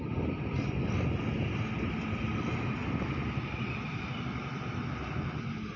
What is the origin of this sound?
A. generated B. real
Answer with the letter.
B